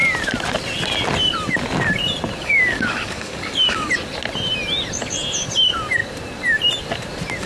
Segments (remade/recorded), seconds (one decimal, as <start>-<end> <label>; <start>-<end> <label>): 0.0-2.4 recorded; 2.4-3.9 remade; 3.9-7.5 recorded